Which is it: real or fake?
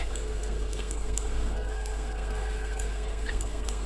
fake